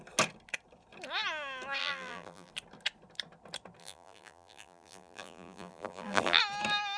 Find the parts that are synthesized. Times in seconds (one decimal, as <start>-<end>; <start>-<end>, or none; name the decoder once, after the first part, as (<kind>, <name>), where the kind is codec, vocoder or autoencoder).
1.8-2.5 (vocoder, BigVGAN v2); 3.8-6.4